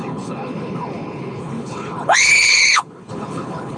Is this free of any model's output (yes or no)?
no